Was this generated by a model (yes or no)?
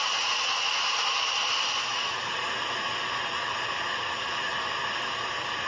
no